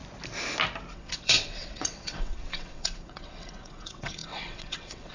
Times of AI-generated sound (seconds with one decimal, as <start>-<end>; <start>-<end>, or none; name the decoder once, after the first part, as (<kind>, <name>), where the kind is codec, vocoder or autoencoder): 0.9-5.1 (vocoder, WaveNeXt)